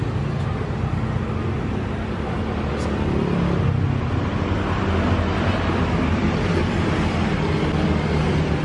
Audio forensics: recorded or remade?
recorded